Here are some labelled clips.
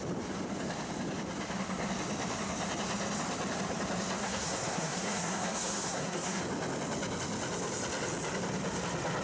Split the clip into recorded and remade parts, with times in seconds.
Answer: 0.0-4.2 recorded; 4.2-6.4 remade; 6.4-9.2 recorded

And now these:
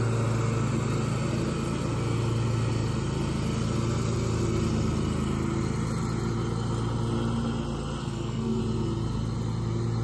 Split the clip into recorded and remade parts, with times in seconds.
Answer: 0.0-8.0 recorded; 8.0-8.6 remade; 8.6-10.0 recorded

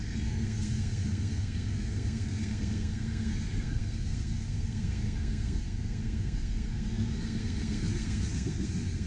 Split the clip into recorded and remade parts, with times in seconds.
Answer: 0.0-9.1 remade